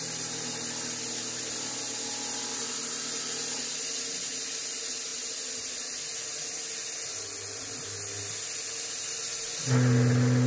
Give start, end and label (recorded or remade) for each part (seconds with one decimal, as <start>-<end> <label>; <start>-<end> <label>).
0.0-10.5 recorded